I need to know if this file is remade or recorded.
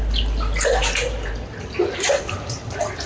recorded